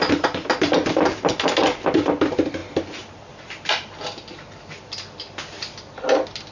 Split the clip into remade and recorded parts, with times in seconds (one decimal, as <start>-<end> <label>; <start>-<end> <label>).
0.0-6.5 recorded